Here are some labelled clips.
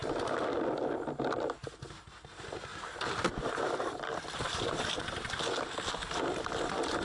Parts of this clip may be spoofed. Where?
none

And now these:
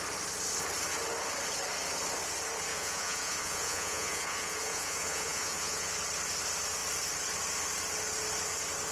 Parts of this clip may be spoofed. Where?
2.7-5.9 (vocoder, Vocos)

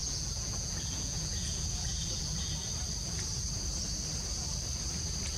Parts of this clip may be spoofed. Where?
0.0-2.5 (vocoder, Vocos)

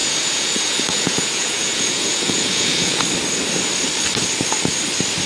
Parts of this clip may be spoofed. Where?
0.0-3.0 (vocoder, Vocos)

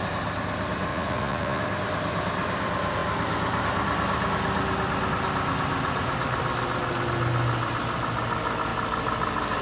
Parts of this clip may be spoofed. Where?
0.9-1.6 (vocoder, Vocos)